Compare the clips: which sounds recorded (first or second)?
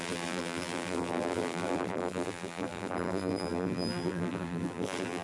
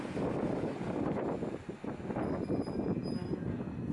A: second